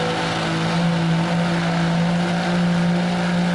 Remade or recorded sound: recorded